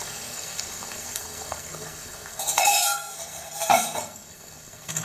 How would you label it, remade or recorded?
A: remade